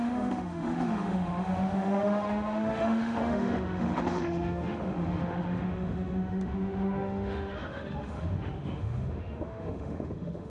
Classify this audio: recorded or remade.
remade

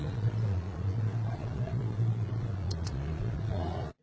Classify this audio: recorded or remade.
remade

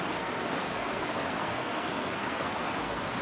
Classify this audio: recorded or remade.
remade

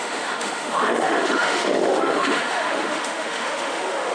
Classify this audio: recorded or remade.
remade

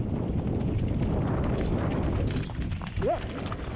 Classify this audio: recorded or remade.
remade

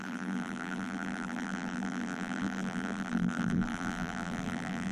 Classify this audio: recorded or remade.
remade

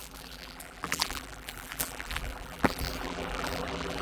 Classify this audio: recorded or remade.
remade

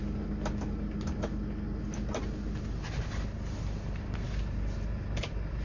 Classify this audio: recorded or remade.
recorded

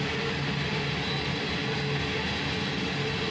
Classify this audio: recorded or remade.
recorded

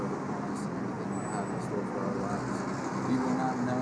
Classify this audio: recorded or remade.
recorded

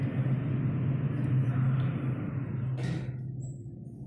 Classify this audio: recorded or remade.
recorded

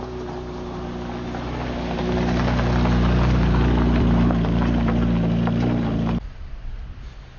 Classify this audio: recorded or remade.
recorded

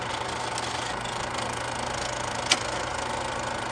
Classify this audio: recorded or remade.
recorded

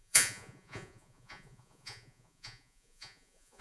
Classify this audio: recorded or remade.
remade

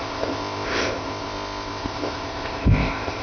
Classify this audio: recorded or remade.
remade